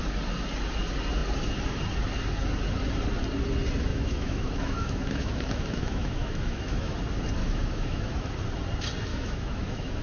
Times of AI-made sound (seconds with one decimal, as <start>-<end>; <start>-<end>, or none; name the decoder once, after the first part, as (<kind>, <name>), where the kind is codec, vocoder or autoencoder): 3.9-6.9 (autoencoder, DAC-VAE); 7.4-8.3; 9.1-10.0